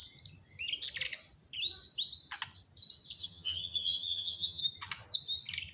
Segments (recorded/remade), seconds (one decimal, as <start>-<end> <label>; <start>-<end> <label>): 0.0-3.2 recorded; 3.2-4.6 remade; 4.6-5.7 recorded